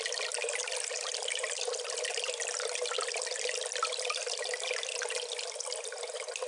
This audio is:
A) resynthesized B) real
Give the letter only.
B